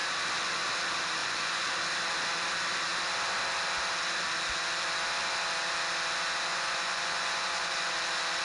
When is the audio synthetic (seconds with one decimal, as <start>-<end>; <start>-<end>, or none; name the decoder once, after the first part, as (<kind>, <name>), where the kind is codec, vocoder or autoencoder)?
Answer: 1.2-1.7 (vocoder, Vocos); 6.5-7.9